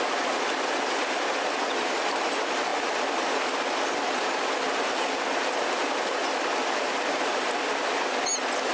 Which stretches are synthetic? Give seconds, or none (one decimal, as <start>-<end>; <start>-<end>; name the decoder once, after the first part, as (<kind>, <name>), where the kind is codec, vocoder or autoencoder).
none